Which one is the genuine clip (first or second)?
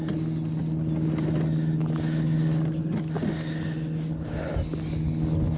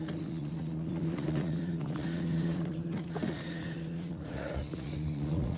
first